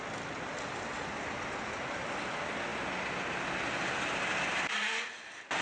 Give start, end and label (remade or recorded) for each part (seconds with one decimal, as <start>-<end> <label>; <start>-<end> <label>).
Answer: 0.0-5.6 recorded